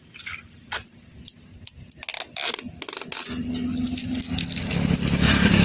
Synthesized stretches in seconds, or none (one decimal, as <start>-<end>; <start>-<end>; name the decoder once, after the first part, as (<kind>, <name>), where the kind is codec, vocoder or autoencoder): none